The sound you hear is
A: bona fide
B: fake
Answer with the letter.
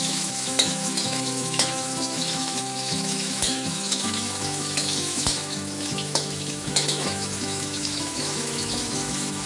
B